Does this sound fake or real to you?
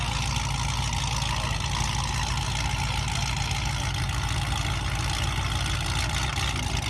real